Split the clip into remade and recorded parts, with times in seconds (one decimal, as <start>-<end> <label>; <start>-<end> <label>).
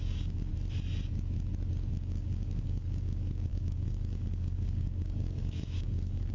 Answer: 0.0-0.5 remade; 0.5-1.9 recorded; 1.9-6.3 remade